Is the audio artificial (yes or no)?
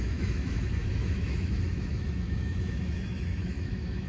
yes